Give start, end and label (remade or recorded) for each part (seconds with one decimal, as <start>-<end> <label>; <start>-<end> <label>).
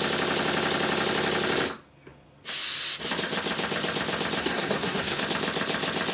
0.0-4.4 recorded; 4.4-5.2 remade; 5.2-6.1 recorded